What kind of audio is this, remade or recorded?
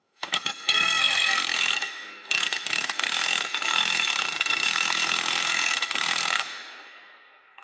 remade